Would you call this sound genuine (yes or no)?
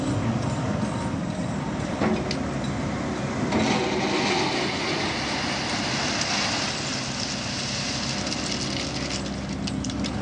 yes